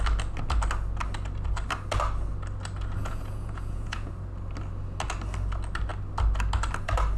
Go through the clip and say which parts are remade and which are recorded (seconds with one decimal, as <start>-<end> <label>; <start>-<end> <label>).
0.0-3.0 recorded; 3.0-4.1 remade; 4.1-7.2 recorded

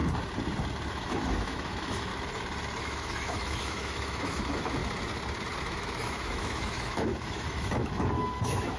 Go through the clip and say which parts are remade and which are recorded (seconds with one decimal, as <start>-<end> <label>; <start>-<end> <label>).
0.0-0.9 recorded; 0.9-2.1 remade; 2.1-2.8 recorded; 2.8-4.8 remade; 4.8-5.6 recorded; 5.6-8.8 remade